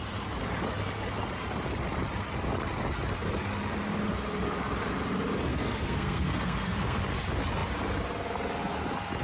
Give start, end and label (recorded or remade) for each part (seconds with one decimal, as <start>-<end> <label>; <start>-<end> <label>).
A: 0.0-5.5 recorded; 5.5-7.0 remade; 7.0-9.2 recorded